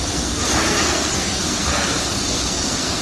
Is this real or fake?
fake